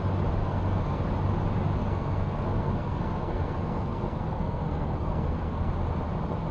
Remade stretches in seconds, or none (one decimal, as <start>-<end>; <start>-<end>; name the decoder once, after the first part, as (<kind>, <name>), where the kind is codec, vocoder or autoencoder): 0.4-1.0 (codec, SNAC); 1.8-5.7